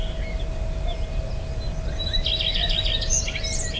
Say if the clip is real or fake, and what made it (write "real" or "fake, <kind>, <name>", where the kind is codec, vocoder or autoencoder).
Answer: real